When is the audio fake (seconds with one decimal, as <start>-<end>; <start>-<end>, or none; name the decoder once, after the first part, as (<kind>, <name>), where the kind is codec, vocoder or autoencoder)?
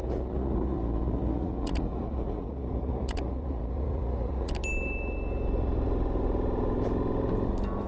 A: 0.0-4.5 (vocoder, Vocos)